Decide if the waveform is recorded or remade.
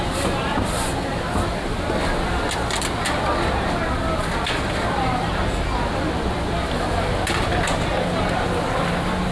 recorded